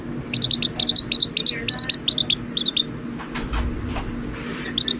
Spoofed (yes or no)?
no